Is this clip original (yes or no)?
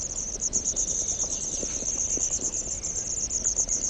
yes